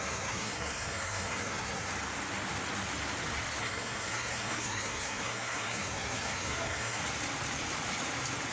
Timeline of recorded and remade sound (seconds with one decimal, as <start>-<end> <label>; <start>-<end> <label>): 0.0-1.9 remade; 1.9-3.6 recorded; 3.6-7.0 remade; 7.0-8.5 recorded